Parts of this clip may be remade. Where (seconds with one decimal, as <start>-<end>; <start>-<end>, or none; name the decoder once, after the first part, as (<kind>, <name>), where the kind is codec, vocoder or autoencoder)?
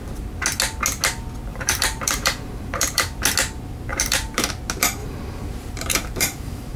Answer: 1.5-3.2 (vocoder, BigVGAN v2); 3.9-4.5; 5.0-6.8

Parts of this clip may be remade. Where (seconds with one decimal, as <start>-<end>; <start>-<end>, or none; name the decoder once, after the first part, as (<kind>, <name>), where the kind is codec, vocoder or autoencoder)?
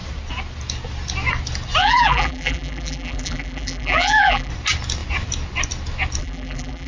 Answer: 1.8-4.5 (vocoder, BigVGAN v2); 6.2-6.9